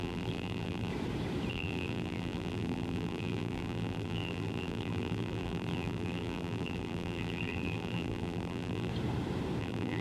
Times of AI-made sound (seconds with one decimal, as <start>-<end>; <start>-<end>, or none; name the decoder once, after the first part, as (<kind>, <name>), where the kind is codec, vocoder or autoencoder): 0.0-0.9 (vocoder, BigVGAN v2); 1.5-8.9; 9.6-10.0